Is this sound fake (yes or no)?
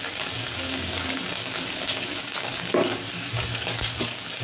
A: yes